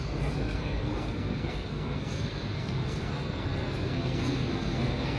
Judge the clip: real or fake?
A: fake